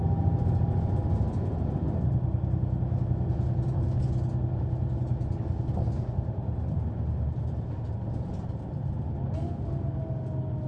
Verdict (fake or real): real